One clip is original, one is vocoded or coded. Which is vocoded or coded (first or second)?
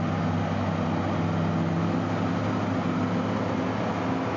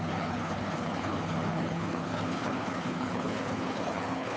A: second